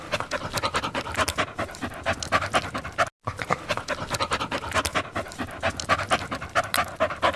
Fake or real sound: real